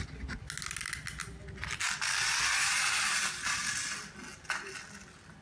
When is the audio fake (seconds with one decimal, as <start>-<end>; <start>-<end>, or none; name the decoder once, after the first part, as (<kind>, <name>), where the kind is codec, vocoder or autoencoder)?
none